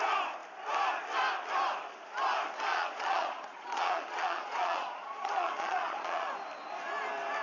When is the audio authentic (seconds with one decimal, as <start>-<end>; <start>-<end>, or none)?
0.0-2.7; 6.3-7.4